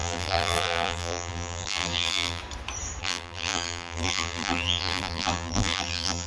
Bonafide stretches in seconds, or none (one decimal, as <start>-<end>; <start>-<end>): 2.4-3.0